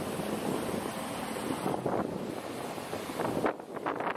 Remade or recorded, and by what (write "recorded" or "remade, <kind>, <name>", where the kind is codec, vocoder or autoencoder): recorded